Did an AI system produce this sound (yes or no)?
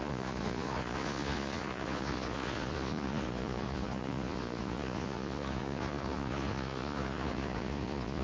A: yes